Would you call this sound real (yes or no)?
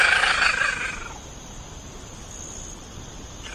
yes